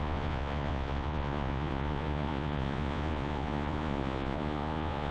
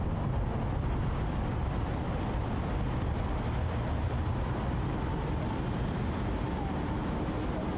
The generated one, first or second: first